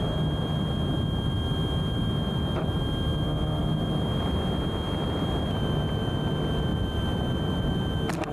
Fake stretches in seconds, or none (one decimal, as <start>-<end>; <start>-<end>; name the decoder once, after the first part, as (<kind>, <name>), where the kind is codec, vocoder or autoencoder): 3.6-4.2 (vocoder, BigVGAN v2); 6.7-7.2